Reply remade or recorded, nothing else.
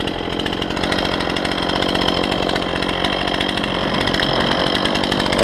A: recorded